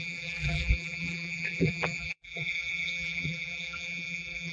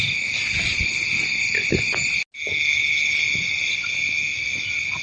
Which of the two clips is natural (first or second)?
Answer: second